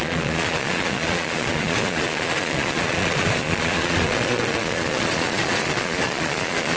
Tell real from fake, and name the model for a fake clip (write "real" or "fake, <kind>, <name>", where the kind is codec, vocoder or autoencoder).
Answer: fake, vocoder, Vocos